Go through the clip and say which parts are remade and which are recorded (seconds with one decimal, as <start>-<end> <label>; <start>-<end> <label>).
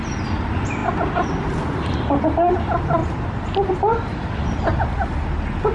0.0-5.7 recorded